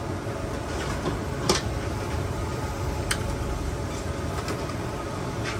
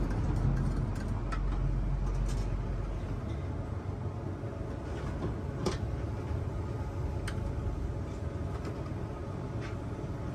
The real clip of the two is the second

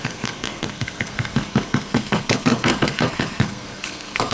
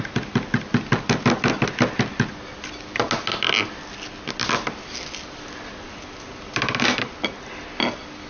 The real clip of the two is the second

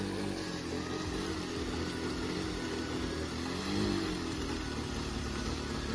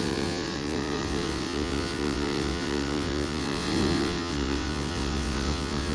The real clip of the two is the first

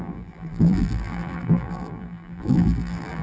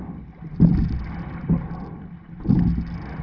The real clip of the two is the second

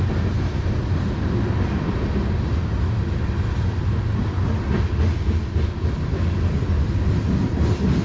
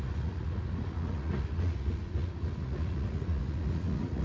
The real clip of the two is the first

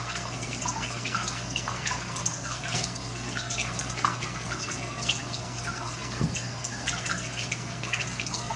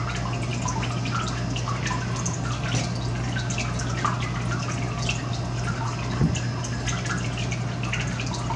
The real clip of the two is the second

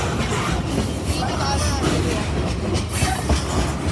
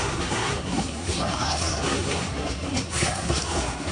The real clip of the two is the first